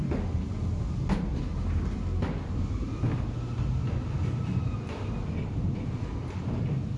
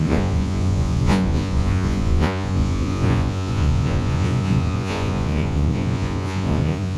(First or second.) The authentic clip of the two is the first